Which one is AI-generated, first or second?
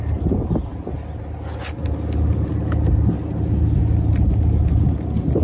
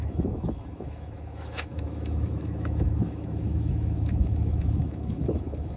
second